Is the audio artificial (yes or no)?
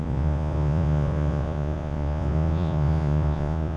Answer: yes